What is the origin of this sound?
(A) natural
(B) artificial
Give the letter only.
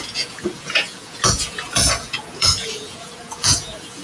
B